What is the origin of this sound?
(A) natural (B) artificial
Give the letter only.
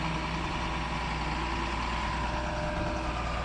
A